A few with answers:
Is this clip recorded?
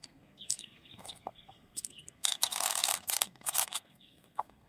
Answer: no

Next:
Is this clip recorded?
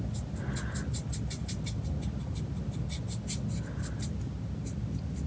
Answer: yes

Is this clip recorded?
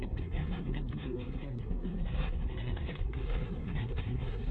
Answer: no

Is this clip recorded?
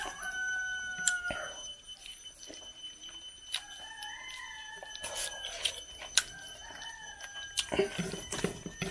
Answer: yes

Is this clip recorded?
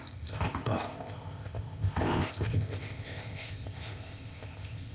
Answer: no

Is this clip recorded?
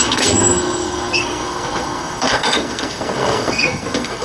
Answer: no